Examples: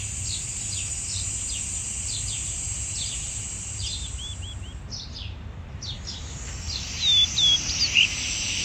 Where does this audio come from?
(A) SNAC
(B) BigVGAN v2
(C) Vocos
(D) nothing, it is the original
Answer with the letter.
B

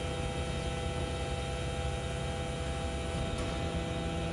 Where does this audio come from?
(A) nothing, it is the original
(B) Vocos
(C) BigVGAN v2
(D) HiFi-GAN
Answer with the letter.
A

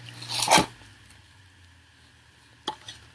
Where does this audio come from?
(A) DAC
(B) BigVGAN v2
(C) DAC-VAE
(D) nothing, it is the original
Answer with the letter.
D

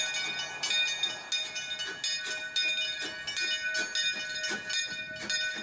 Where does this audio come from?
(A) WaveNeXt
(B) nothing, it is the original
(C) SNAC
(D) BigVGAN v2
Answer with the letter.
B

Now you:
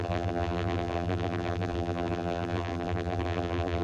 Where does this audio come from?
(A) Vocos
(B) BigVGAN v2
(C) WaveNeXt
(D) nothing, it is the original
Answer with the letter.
B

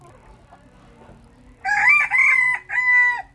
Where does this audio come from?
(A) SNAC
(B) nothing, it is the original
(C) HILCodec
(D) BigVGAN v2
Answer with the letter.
B